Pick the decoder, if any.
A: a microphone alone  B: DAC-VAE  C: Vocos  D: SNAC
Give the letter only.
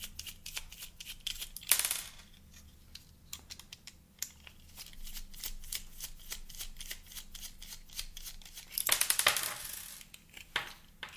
A